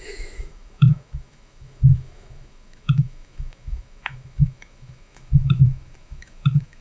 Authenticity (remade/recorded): remade